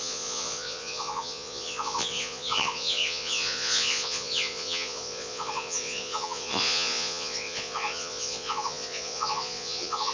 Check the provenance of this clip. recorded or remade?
remade